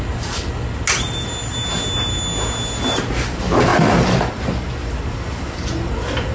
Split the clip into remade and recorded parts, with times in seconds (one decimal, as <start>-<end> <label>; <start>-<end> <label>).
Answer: 0.0-6.3 recorded